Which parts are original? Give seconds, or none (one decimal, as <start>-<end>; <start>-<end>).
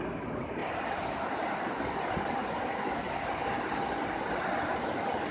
0.0-5.3